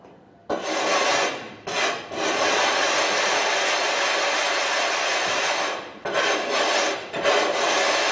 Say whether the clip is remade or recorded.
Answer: recorded